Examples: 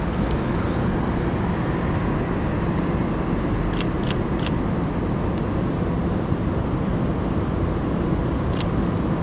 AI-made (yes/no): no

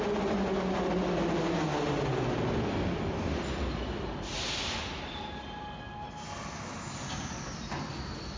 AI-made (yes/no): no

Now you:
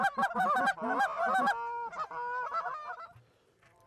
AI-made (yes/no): no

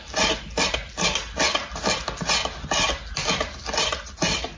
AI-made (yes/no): no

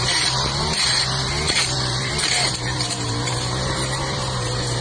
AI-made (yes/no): yes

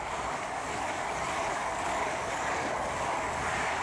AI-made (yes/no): yes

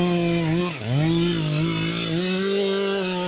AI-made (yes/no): no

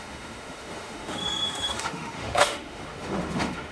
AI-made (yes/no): yes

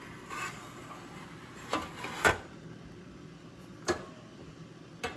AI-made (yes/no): no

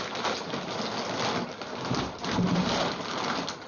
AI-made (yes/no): no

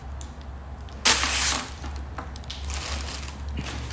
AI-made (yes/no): no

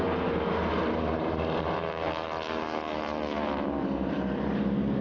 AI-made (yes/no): yes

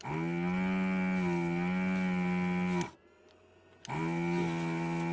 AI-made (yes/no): no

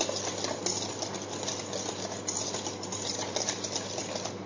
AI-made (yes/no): no